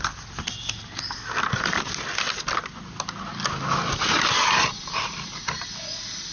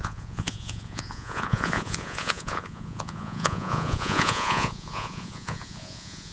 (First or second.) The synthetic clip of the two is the second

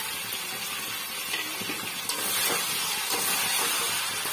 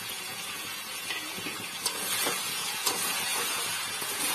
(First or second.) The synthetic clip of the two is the second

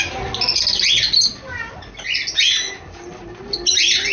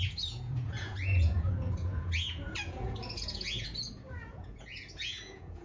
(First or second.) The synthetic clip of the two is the second